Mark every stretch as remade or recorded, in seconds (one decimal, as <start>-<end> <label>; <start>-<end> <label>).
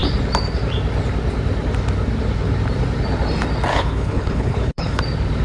0.0-3.7 recorded; 3.7-5.0 remade; 5.0-5.4 recorded